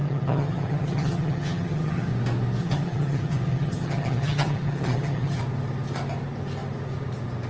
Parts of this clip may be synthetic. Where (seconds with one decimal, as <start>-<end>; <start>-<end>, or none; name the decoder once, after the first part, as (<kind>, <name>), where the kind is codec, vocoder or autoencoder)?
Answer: 0.0-2.1 (vocoder, HiFi-GAN); 2.6-5.4

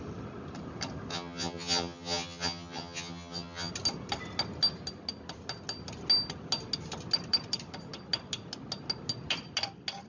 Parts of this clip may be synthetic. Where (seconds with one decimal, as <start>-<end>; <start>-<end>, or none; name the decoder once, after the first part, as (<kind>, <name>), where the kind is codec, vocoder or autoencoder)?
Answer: 1.1-3.7 (vocoder, HiFi-GAN)

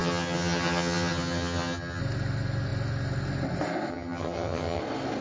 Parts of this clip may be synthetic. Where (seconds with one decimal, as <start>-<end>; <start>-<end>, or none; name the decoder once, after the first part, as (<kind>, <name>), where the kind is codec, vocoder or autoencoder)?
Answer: 0.0-2.0 (vocoder, HiFi-GAN); 3.9-4.8

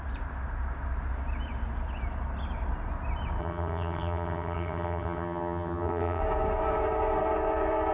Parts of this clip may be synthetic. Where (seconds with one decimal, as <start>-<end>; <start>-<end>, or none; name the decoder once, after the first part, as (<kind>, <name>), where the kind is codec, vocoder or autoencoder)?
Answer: 3.4-6.2 (vocoder, HiFi-GAN)

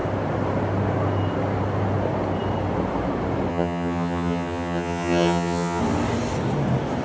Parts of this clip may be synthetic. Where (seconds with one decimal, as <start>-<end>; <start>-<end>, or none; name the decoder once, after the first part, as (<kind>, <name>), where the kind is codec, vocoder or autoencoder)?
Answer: 3.5-5.8 (vocoder, HiFi-GAN)

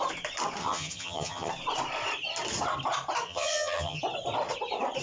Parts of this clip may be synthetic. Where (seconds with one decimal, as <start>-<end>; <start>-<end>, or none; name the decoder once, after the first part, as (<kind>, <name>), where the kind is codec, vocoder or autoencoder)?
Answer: 0.6-1.5 (vocoder, HiFi-GAN); 3.3-4.0

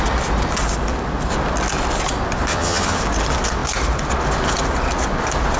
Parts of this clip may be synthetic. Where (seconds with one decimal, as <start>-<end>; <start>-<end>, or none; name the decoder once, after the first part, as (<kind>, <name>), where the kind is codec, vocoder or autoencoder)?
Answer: 2.5-3.0 (vocoder, HiFi-GAN)

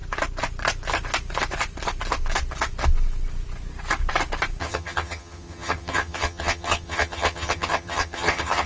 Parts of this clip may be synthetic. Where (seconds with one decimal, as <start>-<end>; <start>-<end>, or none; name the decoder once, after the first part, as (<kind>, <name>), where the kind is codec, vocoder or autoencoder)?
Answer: 4.6-8.7 (vocoder, HiFi-GAN)